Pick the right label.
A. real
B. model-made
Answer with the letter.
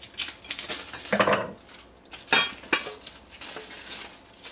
A